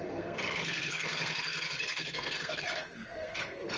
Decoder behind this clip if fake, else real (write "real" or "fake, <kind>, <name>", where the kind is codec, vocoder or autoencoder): fake, codec, SNAC